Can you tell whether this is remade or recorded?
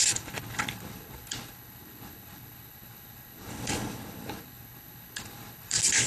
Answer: remade